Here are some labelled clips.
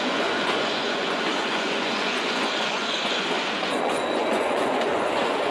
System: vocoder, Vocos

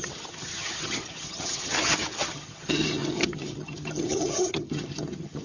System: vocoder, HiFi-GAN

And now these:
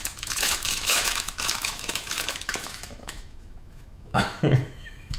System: autoencoder, DAC-VAE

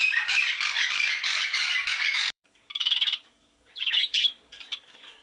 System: codec, DAC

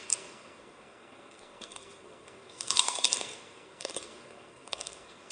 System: codec, SNAC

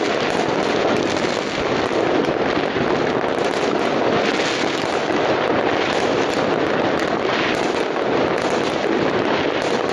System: none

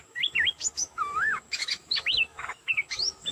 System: autoencoder, DAC-VAE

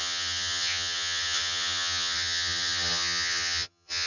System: vocoder, HiFi-GAN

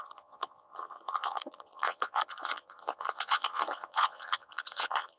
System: vocoder, Vocos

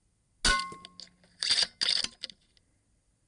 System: none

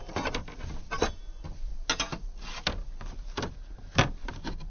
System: none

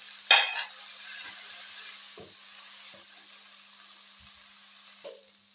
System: none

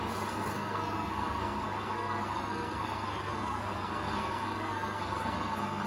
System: codec, SNAC